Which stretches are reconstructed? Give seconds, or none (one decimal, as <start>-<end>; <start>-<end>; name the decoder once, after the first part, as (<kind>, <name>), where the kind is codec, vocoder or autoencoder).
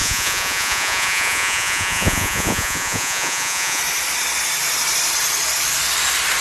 0.0-3.8 (vocoder, Vocos)